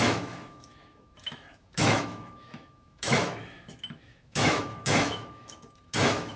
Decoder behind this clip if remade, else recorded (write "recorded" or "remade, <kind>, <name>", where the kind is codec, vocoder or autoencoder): remade, autoencoder, DAC-VAE